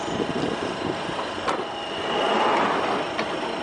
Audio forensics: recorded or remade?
recorded